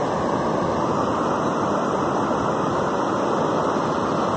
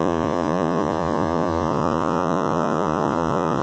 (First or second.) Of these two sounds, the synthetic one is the second